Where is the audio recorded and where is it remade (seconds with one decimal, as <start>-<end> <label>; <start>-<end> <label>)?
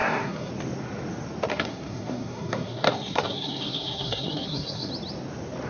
0.0-0.5 remade; 0.5-1.5 recorded; 1.5-4.9 remade; 4.9-5.7 recorded